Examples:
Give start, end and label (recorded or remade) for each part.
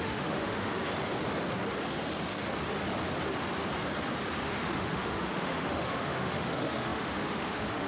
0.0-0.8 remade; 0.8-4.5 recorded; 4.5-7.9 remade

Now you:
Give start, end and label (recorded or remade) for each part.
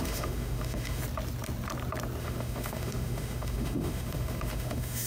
0.0-1.0 remade; 1.0-2.2 recorded; 2.2-5.1 remade